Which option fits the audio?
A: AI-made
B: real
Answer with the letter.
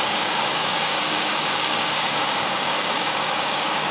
A